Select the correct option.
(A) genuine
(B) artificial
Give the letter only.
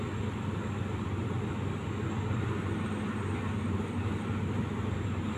A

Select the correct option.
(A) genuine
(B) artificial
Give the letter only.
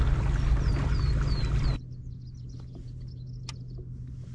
A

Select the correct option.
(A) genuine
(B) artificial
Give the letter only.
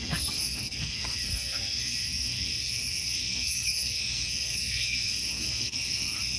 B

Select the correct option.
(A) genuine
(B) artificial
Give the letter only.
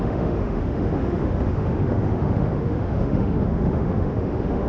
B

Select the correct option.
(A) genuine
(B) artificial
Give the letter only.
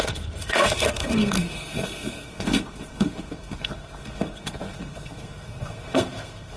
B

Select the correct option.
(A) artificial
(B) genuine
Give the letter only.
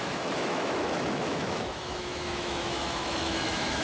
A